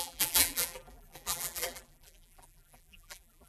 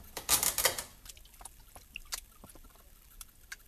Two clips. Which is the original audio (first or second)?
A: second